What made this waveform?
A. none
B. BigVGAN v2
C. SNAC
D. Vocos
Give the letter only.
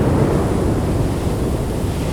A